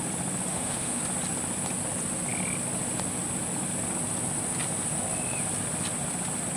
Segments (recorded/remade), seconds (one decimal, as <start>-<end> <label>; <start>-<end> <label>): 0.0-0.5 recorded; 0.5-1.0 remade; 1.0-6.6 recorded